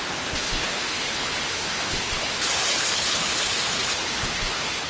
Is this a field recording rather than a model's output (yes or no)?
no